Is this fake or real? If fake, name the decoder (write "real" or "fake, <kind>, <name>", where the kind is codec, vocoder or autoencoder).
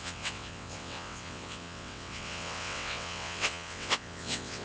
fake, vocoder, WaveNeXt